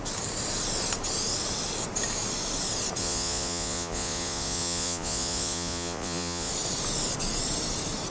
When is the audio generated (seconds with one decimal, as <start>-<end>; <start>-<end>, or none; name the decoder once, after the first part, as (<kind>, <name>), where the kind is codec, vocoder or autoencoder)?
3.0-6.5 (vocoder, Vocos)